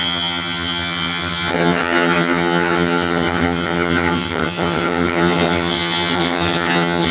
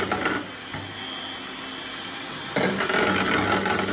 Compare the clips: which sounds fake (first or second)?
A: first